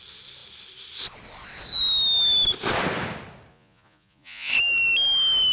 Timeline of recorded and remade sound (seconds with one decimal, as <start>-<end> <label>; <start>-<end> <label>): 0.0-3.5 recorded; 3.5-4.5 remade; 4.5-5.5 recorded

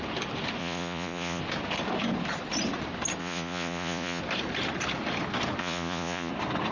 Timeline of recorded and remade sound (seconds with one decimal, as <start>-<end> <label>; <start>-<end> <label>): 0.0-0.6 recorded; 0.6-1.4 remade; 1.4-3.2 recorded; 3.2-4.2 remade; 4.2-5.6 recorded; 5.6-6.3 remade; 6.3-6.7 recorded

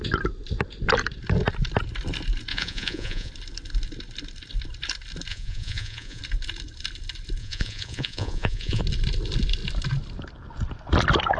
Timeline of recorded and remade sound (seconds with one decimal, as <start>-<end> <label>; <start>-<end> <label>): 0.0-2.5 recorded; 2.5-3.3 remade; 3.3-5.3 recorded; 5.3-6.2 remade; 6.2-7.4 recorded; 7.4-8.8 remade; 8.8-11.4 recorded

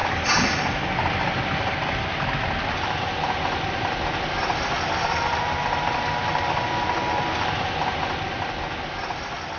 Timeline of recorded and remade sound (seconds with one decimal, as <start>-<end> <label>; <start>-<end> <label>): 0.0-9.6 recorded

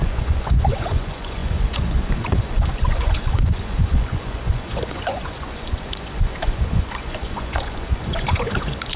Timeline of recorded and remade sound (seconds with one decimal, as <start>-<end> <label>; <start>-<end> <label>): 0.0-9.0 remade

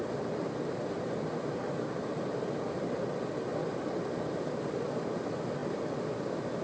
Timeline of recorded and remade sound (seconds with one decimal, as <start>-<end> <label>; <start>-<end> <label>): 0.0-6.6 recorded

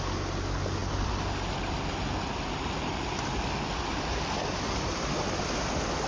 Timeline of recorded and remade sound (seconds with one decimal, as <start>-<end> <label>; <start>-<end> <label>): 0.0-6.1 recorded

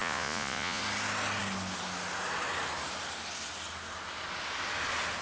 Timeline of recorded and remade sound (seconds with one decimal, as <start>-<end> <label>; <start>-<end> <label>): 0.0-0.8 remade; 0.8-5.2 recorded